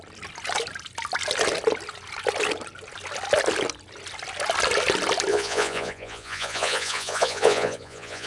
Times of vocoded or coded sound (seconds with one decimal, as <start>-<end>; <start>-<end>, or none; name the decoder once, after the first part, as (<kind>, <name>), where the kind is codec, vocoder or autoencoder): 5.3-8.3 (vocoder, Vocos)